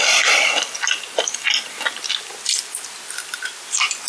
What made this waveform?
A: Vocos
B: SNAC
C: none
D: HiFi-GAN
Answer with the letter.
C